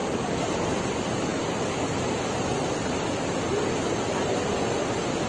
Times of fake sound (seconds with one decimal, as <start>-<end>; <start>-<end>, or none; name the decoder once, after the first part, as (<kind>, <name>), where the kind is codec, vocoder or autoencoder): 0.0-0.8 (vocoder, BigVGAN v2)